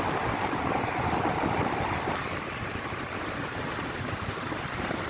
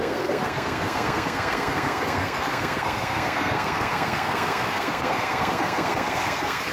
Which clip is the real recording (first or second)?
first